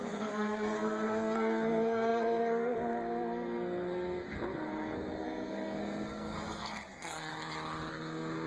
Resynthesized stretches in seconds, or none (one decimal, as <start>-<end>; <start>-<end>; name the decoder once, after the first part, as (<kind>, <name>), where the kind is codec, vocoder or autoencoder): 0.0-7.3 (codec, SNAC); 7.9-8.5